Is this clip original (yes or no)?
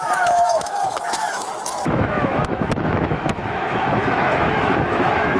no